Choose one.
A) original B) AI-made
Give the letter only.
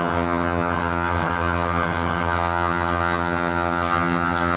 B